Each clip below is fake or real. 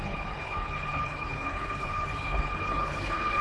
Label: fake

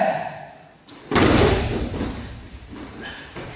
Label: real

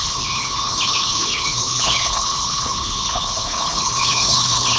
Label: fake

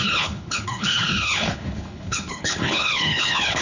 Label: fake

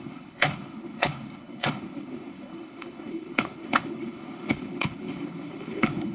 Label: fake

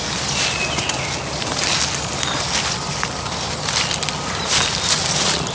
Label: real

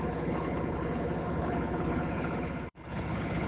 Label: fake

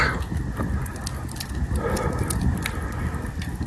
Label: real